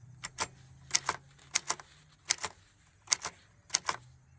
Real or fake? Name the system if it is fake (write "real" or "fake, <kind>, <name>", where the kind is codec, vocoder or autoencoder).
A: real